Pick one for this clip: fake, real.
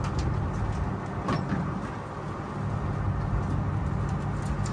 real